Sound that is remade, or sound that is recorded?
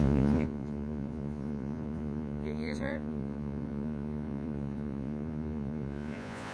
remade